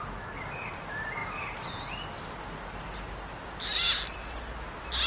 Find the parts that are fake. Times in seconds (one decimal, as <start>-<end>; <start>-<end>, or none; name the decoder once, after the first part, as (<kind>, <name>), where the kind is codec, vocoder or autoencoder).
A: none